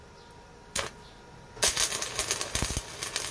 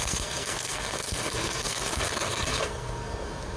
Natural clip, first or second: first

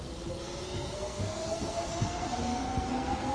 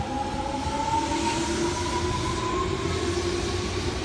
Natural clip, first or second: second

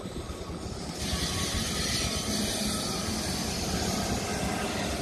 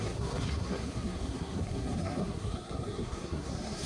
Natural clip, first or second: first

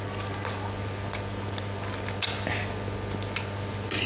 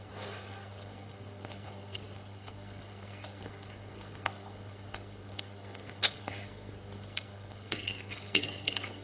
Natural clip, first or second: first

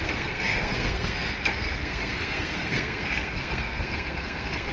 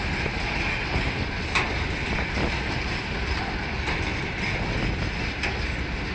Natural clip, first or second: second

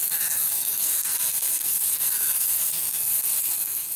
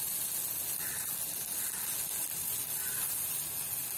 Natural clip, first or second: second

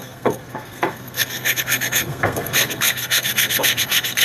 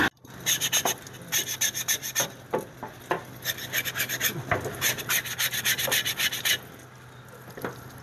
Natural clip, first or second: second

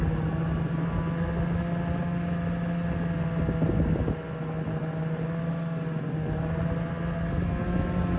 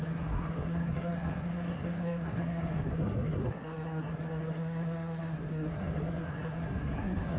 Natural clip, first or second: first